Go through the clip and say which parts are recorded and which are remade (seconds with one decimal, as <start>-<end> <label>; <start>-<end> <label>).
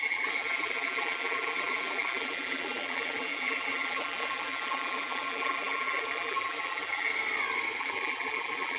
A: 0.0-7.1 remade; 7.1-7.8 recorded; 7.8-8.8 remade